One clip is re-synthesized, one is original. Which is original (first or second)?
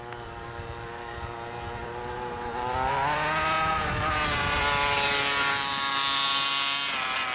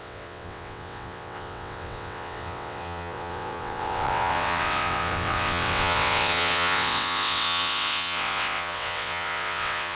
first